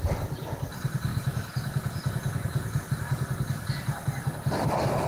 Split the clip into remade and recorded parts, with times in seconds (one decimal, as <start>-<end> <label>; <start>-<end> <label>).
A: 0.0-1.1 recorded; 1.1-2.9 remade; 2.9-5.1 recorded